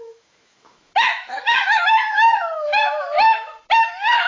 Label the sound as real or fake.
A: fake